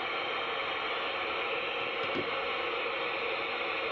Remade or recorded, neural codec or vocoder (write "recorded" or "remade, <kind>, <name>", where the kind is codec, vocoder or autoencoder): recorded